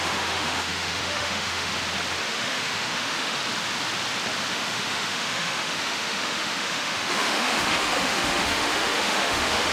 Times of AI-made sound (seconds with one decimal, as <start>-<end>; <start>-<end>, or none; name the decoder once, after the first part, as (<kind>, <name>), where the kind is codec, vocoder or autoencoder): 0.0-1.7 (autoencoder, DAC-VAE); 2.2-3.4; 4.5-9.7